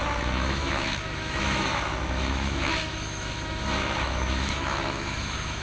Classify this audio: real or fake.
fake